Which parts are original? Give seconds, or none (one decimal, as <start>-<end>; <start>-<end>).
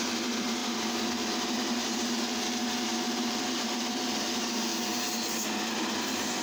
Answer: 0.6-3.4; 4.7-5.7